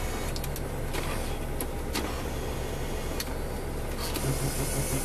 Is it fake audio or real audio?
real